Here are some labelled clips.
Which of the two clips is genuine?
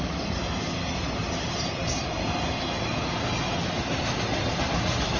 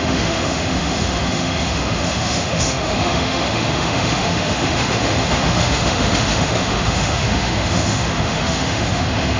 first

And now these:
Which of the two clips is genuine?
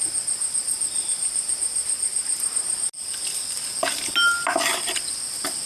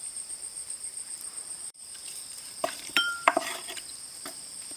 first